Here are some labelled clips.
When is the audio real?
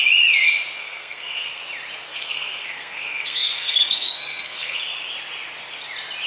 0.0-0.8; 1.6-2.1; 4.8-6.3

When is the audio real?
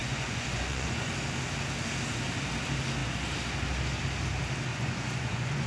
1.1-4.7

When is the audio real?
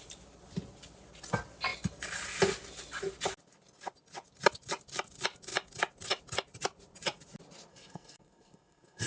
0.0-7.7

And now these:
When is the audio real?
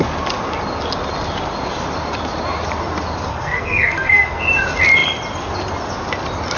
0.0-3.3; 4.4-6.6